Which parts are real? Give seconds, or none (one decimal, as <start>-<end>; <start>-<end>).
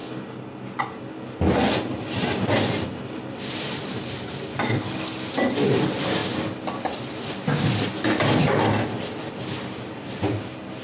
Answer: 0.0-10.8